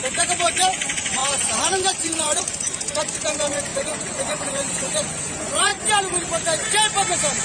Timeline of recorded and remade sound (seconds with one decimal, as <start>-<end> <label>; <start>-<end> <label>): 0.0-5.7 remade; 5.7-7.4 recorded